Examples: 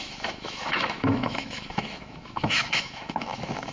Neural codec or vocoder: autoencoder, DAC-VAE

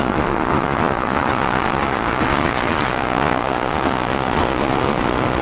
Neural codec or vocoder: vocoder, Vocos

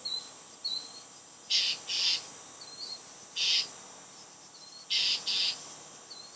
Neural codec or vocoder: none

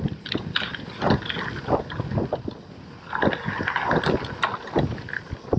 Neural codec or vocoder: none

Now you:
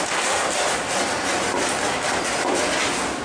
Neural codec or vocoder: none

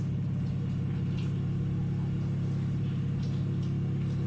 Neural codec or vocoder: none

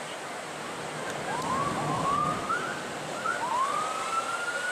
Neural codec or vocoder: none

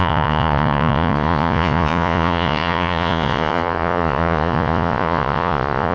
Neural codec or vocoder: vocoder, Vocos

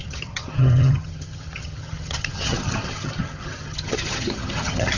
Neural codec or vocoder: vocoder, HiFi-GAN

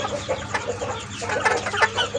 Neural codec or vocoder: none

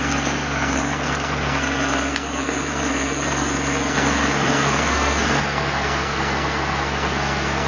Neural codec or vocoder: codec, SNAC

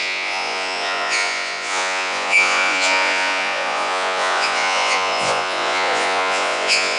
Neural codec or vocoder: vocoder, Vocos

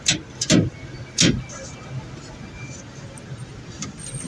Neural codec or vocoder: none